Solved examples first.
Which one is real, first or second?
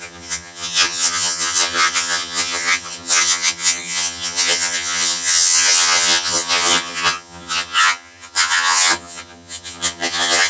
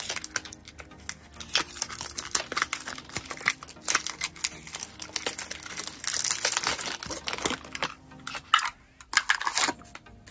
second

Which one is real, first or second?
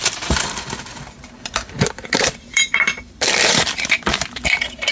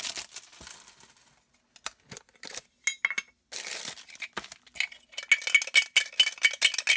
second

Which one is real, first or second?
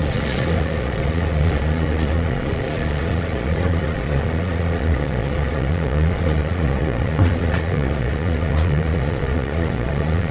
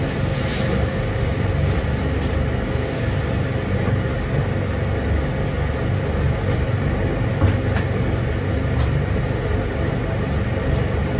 second